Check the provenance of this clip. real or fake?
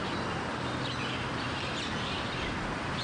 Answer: real